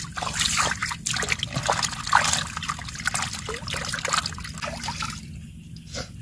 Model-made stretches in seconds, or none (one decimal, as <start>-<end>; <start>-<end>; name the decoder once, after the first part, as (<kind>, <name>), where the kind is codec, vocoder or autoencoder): none